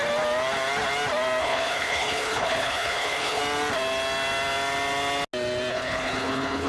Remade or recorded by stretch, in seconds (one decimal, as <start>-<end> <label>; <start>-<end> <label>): 0.0-1.4 recorded; 1.4-3.4 remade; 3.4-5.7 recorded; 5.7-6.7 remade